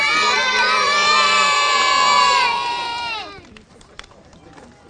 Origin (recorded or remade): remade